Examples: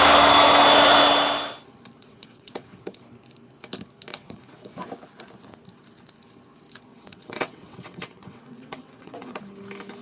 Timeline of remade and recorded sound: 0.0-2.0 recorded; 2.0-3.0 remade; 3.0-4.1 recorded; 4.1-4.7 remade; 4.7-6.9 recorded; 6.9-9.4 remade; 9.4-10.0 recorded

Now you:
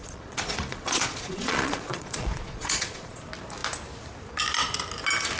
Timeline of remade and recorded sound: 0.0-3.2 remade; 3.2-5.4 recorded